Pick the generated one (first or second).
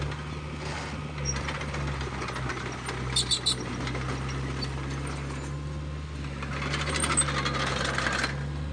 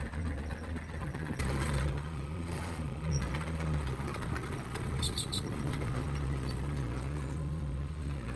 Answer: second